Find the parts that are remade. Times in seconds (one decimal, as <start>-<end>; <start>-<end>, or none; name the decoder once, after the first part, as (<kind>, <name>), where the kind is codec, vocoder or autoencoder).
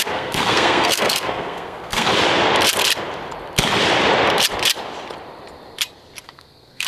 0.0-2.1 (codec, SNAC); 6.2-6.9